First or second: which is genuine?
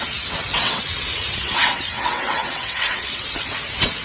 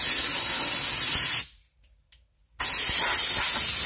second